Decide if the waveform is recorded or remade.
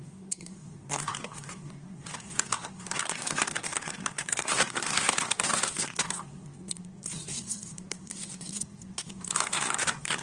remade